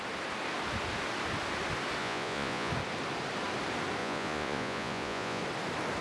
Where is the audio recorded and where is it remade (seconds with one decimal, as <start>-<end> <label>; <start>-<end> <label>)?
0.0-2.0 recorded; 2.0-2.7 remade; 2.7-4.0 recorded; 4.0-5.4 remade; 5.4-6.0 recorded